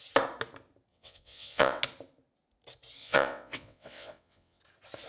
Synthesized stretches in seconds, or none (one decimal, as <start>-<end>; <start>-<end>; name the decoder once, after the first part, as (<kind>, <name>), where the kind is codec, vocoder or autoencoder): 0.9-1.8 (vocoder, WaveNeXt); 3.0-4.6